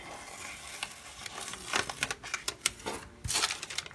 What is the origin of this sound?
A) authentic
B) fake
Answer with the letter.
A